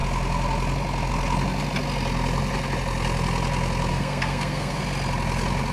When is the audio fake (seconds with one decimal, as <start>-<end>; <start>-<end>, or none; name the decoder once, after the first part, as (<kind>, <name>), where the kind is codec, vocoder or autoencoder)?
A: 3.9-4.8 (codec, SNAC)